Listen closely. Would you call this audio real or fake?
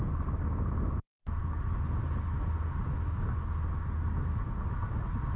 real